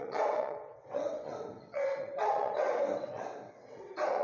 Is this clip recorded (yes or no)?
no